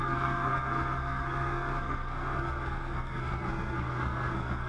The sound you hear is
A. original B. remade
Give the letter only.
B